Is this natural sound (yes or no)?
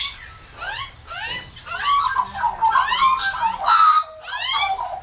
yes